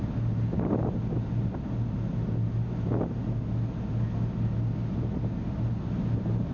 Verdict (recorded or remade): recorded